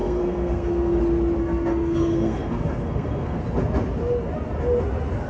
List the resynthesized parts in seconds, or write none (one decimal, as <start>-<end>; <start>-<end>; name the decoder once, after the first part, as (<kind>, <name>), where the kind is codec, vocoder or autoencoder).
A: 0.0-1.0 (codec, SNAC); 1.4-3.4